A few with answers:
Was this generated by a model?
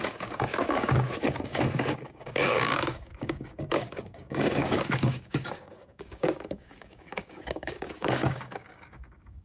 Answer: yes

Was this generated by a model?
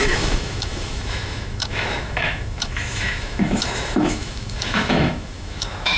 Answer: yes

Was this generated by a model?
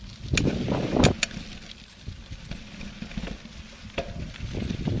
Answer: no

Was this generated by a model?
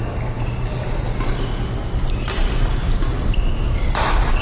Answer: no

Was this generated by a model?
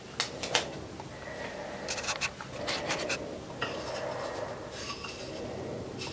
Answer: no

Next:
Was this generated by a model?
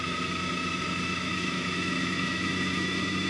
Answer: yes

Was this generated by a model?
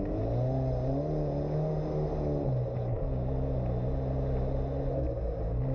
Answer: no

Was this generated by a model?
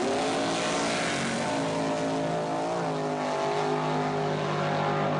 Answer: no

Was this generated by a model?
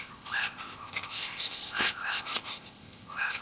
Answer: yes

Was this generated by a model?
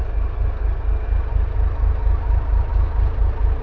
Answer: no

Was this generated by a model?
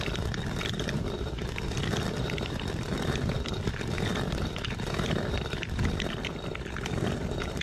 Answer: no